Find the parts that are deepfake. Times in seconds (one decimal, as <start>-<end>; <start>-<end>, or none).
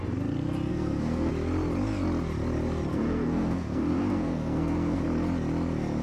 0.7-1.3; 2.9-5.0